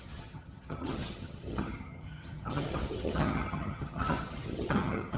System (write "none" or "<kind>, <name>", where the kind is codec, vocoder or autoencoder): vocoder, HiFi-GAN